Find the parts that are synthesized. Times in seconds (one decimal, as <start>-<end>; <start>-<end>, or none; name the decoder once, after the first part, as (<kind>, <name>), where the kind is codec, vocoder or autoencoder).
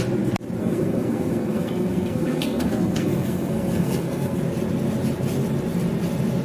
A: 0.6-4.4 (codec, SNAC)